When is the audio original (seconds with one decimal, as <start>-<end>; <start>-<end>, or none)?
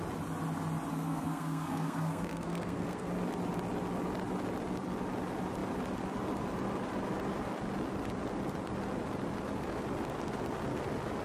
0.0-0.9; 3.1-11.2